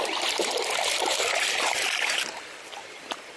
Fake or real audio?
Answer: fake